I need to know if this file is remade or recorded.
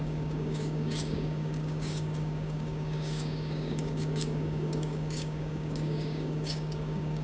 remade